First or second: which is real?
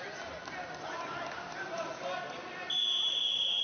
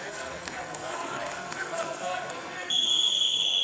first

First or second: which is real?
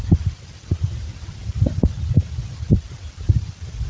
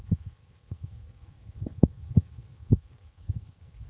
first